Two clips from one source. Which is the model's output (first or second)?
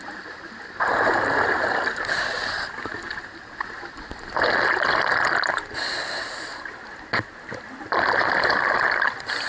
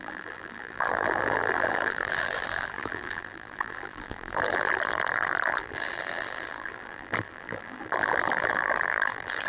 second